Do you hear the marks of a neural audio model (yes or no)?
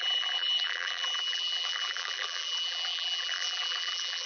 yes